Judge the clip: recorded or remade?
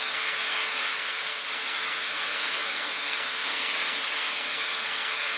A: remade